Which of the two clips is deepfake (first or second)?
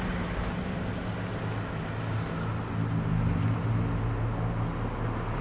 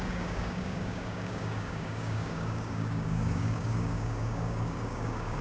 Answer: second